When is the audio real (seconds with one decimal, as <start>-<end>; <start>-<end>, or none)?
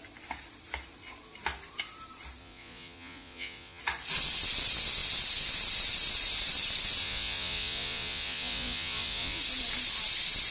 0.0-2.4; 3.8-7.0; 9.4-10.5